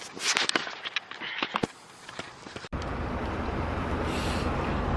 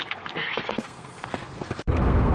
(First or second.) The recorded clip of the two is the first